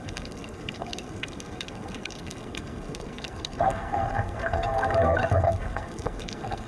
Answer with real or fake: fake